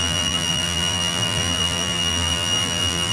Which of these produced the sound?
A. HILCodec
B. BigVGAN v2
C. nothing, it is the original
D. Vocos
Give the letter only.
B